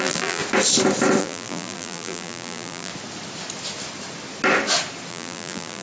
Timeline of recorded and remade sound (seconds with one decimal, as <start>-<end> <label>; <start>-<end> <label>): 0.0-0.4 remade; 0.4-1.2 recorded; 1.2-2.9 remade; 2.9-5.1 recorded; 5.1-5.8 remade